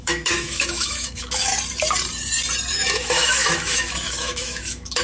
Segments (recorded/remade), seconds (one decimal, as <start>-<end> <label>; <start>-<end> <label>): 0.0-1.5 remade; 1.5-2.7 recorded; 2.7-5.0 remade